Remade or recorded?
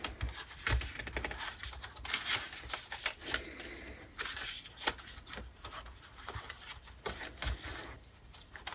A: recorded